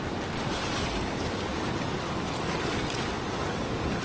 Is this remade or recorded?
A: recorded